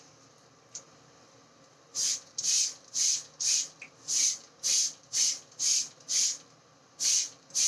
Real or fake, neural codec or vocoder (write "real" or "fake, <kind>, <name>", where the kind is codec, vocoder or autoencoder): real